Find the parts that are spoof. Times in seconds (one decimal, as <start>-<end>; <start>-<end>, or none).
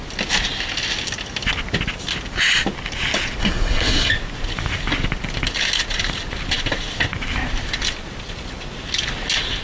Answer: 3.4-4.1